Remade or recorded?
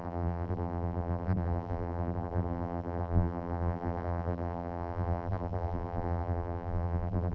remade